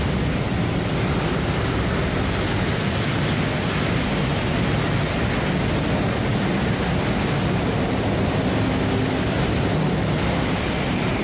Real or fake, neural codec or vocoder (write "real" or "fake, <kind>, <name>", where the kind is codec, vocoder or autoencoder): real